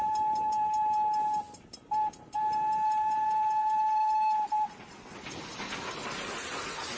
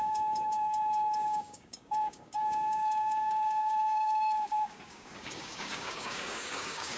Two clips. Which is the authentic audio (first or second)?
first